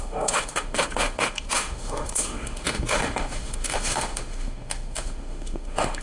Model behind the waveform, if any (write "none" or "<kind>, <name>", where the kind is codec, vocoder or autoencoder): autoencoder, DAC-VAE